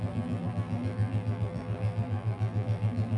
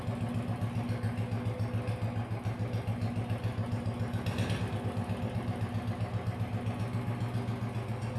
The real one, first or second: second